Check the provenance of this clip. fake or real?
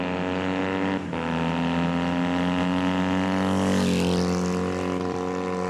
real